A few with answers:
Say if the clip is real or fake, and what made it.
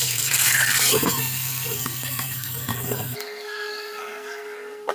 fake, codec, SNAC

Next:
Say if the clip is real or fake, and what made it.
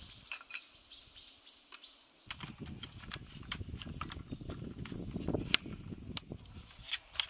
real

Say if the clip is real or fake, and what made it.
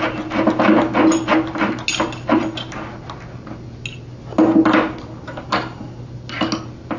real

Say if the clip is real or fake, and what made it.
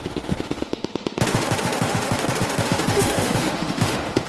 fake, autoencoder, DAC-VAE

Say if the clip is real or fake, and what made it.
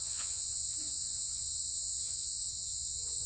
fake, vocoder, Vocos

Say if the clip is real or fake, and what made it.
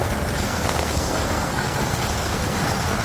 fake, codec, SNAC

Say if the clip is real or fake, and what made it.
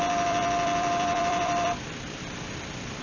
fake, vocoder, BigVGAN v2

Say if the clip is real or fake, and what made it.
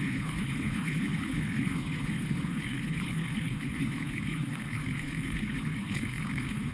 fake, codec, HILCodec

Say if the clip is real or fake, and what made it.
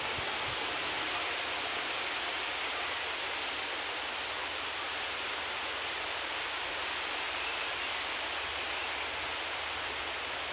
real